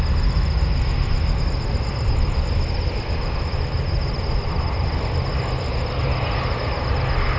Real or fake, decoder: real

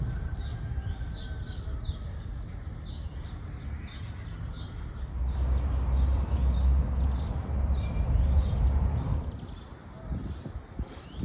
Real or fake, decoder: real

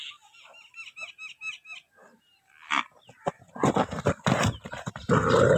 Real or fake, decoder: real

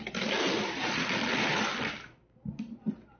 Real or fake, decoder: real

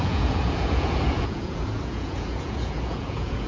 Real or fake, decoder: fake, vocoder, Vocos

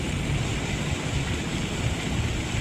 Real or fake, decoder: real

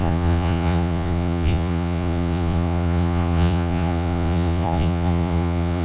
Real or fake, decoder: fake, vocoder, Vocos